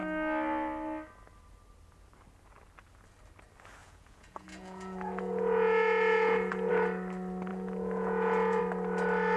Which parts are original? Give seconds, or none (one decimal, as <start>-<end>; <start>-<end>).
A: 0.0-3.8; 6.7-7.5; 8.6-9.4